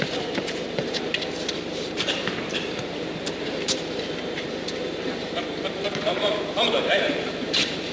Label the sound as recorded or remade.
remade